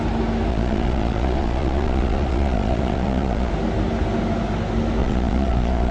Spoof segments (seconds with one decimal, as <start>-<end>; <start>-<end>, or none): 0.5-3.5; 5.0-5.9